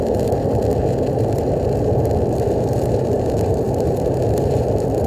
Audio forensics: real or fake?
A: fake